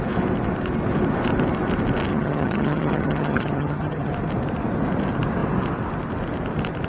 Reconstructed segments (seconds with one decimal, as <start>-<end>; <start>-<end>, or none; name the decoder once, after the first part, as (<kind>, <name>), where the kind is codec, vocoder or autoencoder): 2.1-4.1 (vocoder, HiFi-GAN)